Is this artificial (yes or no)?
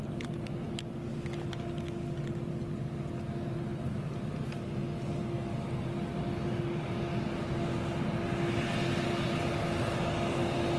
no